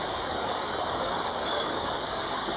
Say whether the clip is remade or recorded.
remade